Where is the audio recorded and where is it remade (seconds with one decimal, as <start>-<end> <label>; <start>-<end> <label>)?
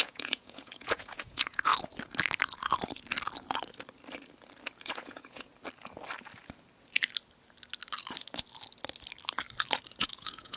0.0-1.7 remade; 1.7-4.8 recorded; 4.8-5.5 remade; 5.5-10.0 recorded; 10.0-10.6 remade